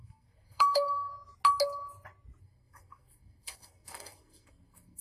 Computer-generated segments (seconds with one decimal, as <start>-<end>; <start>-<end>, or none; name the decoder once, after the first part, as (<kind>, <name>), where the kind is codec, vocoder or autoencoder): 0.0-1.1 (codec, SNAC); 2.4-5.0